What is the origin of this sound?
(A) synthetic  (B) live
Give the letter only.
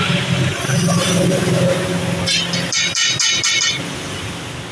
B